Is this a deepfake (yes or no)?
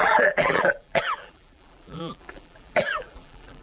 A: yes